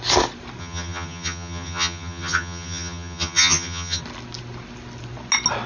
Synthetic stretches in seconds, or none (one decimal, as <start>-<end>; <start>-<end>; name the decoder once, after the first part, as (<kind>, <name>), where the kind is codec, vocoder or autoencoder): 0.6-4.0 (vocoder, HiFi-GAN)